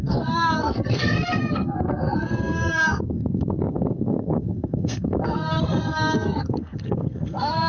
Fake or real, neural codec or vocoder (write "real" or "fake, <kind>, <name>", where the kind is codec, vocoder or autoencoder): fake, codec, SNAC